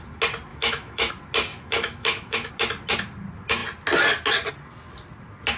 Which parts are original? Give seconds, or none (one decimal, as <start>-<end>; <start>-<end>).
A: 0.0-0.5; 1.1-1.5; 2.5-5.6